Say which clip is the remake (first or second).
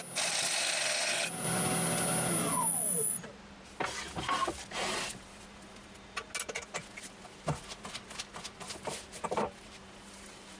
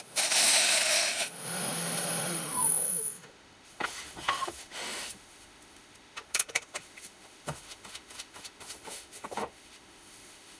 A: second